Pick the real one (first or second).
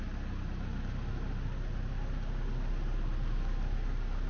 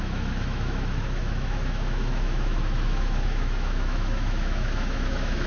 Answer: first